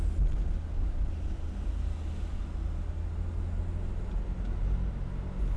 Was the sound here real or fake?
real